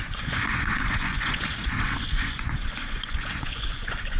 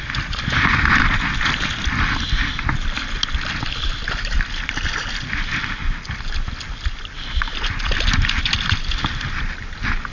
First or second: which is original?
second